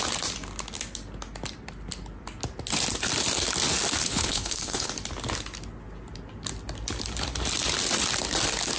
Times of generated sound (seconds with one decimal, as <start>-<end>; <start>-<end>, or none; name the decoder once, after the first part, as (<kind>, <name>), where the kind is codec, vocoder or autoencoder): 4.0-4.9 (codec, HILCodec)